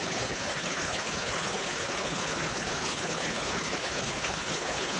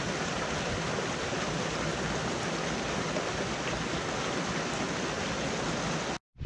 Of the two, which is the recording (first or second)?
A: second